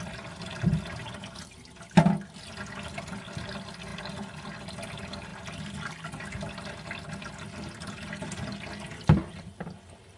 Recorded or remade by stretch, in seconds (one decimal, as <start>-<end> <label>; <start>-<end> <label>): 0.0-10.2 recorded